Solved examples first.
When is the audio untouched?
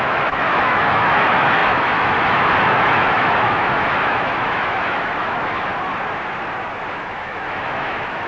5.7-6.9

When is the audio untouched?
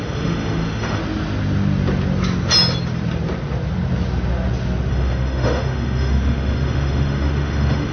1.0-4.9